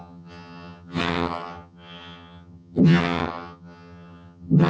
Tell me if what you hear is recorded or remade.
remade